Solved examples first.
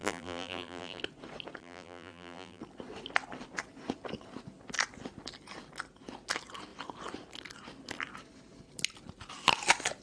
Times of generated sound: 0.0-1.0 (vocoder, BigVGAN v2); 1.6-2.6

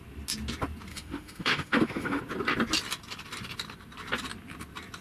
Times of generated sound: 0.9-2.2 (autoencoder, DAC-VAE)

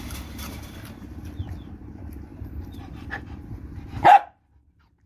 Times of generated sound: 0.0-5.1 (vocoder, BigVGAN v2)

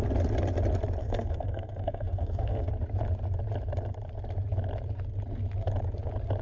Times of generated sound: 1.0-2.7 (codec, SNAC)

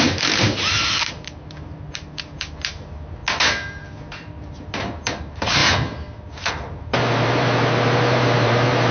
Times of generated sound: 0.0-3.2 (vocoder, BigVGAN v2); 4.1-5.6; 6.5-8.9

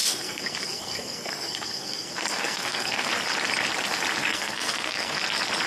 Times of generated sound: 0.0-3.1 (codec, SNAC); 4.2-5.2

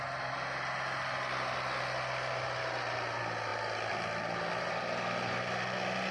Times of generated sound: none